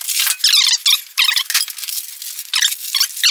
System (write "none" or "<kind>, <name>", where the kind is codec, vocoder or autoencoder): none